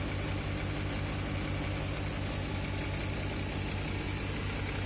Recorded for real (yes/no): yes